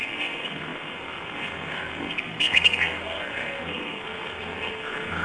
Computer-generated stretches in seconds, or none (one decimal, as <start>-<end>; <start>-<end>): 0.0-5.2